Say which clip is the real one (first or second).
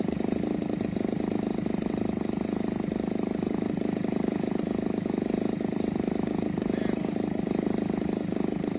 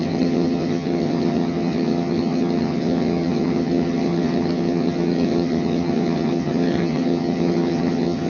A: first